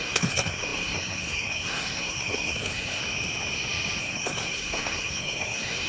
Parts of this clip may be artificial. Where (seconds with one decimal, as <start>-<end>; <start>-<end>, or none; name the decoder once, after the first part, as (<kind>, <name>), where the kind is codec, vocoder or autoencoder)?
0.0-3.0 (codec, SNAC); 4.0-5.9